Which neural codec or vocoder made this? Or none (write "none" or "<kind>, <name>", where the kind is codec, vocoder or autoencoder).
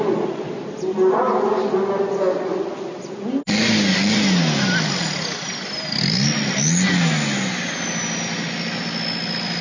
none